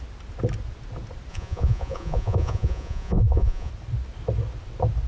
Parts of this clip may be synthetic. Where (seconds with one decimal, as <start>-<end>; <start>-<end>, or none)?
1.3-3.7